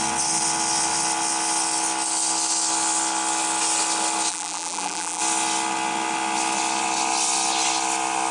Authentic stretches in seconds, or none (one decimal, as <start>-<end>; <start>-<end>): 0.0-4.3; 5.2-8.3